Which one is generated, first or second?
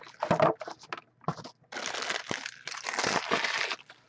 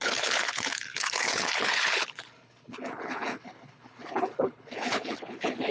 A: second